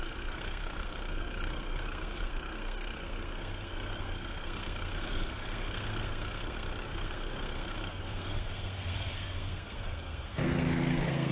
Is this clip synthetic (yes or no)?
yes